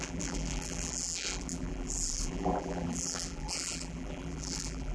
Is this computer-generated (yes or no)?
yes